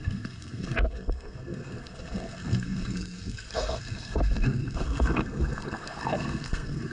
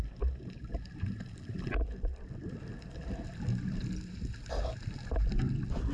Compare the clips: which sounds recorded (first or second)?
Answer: second